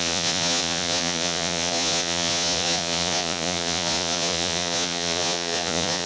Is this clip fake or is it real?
fake